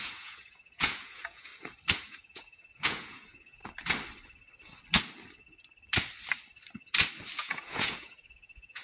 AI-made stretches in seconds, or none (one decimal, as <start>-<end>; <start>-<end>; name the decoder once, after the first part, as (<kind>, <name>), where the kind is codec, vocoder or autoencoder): 0.0-1.5 (vocoder, Vocos); 2.1-3.6; 7.4-8.8

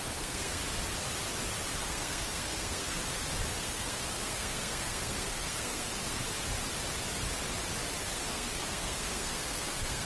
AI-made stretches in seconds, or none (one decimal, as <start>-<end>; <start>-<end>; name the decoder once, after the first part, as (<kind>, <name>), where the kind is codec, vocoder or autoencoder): 0.0-0.6 (codec, SNAC); 1.8-3.0; 3.5-6.2; 8.0-10.0

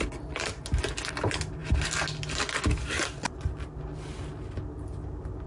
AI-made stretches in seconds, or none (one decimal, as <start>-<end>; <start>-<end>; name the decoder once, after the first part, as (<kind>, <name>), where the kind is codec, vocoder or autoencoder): none

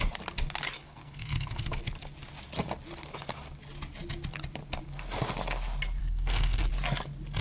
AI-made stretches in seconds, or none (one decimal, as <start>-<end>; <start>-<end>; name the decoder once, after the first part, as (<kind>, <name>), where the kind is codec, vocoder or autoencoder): 0.8-1.8 (codec, SNAC); 6.0-6.7

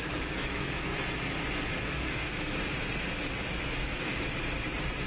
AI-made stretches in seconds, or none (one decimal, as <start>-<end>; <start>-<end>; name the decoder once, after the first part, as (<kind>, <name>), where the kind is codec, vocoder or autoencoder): 0.0-0.9 (autoencoder, DAC-VAE); 1.8-2.6; 3.5-4.1

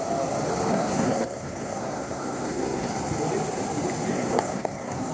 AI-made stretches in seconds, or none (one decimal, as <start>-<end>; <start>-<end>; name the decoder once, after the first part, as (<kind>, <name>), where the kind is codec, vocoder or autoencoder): 0.7-2.9 (codec, SNAC); 4.1-5.1

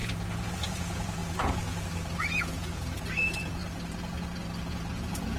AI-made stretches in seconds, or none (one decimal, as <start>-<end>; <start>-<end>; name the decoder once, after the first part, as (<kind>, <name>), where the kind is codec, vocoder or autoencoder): 0.0-3.6 (vocoder, Vocos); 4.6-5.4

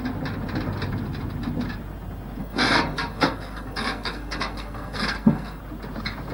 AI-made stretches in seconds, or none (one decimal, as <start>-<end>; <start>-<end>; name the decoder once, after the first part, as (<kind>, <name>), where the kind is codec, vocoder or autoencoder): 2.4-5.6 (codec, SNAC)